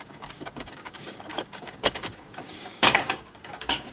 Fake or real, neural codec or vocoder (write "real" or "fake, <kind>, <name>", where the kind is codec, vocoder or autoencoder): fake, codec, DAC